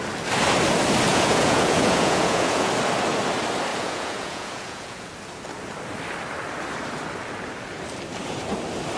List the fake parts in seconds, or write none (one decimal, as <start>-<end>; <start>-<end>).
1.1-2.7; 3.7-5.1